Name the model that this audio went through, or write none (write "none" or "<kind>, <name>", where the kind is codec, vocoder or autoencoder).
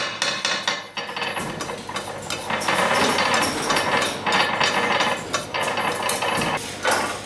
none